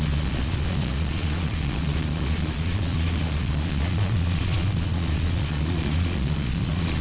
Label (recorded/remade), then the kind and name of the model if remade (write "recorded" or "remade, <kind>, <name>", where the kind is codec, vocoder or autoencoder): remade, vocoder, Vocos